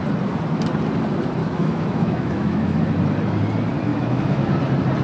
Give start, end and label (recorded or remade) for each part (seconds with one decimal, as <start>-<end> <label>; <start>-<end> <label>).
0.0-1.4 recorded; 1.4-2.8 remade; 2.8-3.9 recorded; 3.9-4.5 remade; 4.5-5.0 recorded